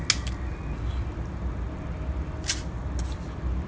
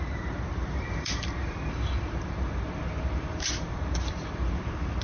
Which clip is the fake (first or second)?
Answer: second